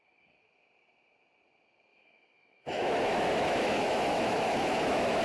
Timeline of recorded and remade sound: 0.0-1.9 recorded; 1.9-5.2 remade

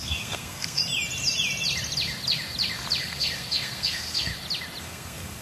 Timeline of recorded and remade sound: 0.0-0.8 remade; 0.8-3.0 recorded; 3.0-4.3 remade; 4.3-4.8 recorded; 4.8-5.4 remade